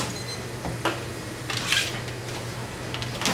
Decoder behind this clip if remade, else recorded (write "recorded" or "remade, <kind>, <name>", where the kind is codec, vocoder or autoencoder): recorded